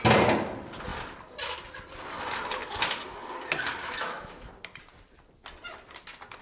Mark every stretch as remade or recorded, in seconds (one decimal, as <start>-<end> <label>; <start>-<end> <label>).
0.0-3.8 recorded; 3.8-4.5 remade; 4.5-6.4 recorded